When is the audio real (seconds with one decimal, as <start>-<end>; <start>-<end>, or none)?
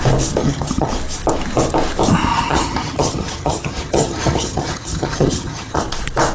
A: 0.0-0.4; 0.9-2.3; 5.8-6.3